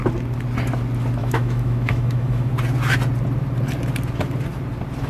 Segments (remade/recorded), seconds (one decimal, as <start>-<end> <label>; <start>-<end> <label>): 0.0-1.2 recorded; 1.2-2.5 remade; 2.5-5.1 recorded